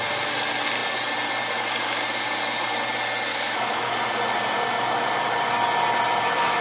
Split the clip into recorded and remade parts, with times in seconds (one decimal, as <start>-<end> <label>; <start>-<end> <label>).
0.0-3.3 recorded; 3.3-3.9 remade; 3.9-6.6 recorded